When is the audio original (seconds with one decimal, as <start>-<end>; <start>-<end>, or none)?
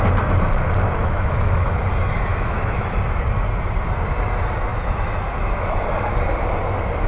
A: 0.0-1.0; 1.8-2.3; 3.0-4.7; 5.8-7.1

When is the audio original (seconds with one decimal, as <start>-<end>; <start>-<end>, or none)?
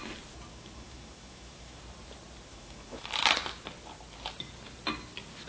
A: 0.0-0.5; 1.8-2.5; 3.1-5.5